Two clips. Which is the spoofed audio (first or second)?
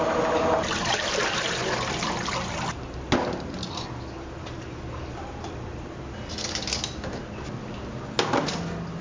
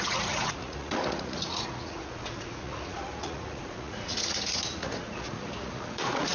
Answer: second